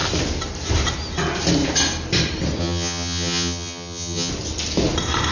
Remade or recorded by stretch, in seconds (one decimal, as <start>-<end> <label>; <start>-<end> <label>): 0.0-2.6 recorded; 2.6-4.3 remade; 4.3-5.3 recorded